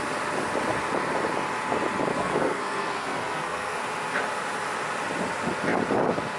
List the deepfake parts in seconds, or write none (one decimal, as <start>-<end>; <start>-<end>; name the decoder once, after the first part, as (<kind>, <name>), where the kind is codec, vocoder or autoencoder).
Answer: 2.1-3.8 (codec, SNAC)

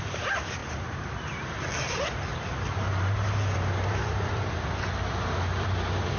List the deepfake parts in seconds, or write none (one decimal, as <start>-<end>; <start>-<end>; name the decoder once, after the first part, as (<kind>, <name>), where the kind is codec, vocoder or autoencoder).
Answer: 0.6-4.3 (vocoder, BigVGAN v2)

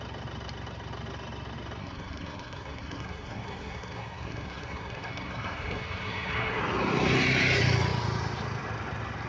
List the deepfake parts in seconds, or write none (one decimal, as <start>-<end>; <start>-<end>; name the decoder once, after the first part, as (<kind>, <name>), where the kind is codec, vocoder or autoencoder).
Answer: 1.8-6.6 (codec, SNAC)

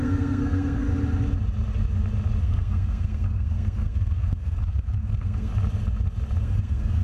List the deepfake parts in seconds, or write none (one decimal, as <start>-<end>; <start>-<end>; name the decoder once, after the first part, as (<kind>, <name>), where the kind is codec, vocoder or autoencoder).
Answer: 0.0-0.9 (codec, SNAC); 2.4-5.5; 6.4-7.0